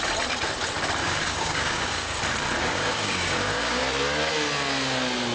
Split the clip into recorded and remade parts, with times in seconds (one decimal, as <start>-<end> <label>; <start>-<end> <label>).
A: 0.0-1.0 recorded; 1.0-2.2 remade; 2.2-2.6 recorded; 2.6-3.8 remade; 3.8-5.3 recorded